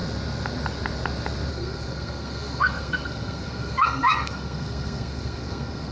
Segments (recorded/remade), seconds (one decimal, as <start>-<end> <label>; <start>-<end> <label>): 0.0-1.5 recorded; 1.5-5.9 remade